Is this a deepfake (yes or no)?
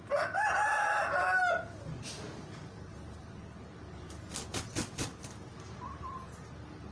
no